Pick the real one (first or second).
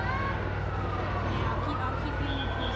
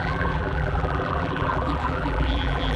first